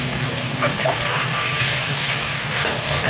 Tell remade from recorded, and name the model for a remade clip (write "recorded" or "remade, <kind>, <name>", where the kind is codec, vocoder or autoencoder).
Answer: remade, codec, DAC